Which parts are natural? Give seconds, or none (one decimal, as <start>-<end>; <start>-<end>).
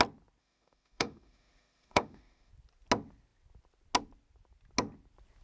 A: 0.0-0.4; 2.5-5.4